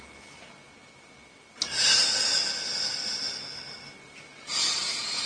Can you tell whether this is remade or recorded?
recorded